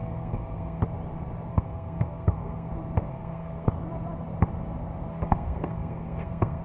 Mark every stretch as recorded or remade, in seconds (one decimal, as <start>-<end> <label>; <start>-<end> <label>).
0.0-0.8 remade; 0.8-1.5 recorded; 1.5-2.7 remade; 2.7-3.1 recorded; 3.1-3.7 remade; 3.7-5.1 recorded; 5.1-6.6 remade